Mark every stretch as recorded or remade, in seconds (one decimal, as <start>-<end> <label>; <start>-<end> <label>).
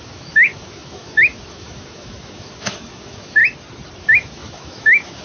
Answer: 0.0-3.4 remade; 3.4-4.0 recorded; 4.0-5.2 remade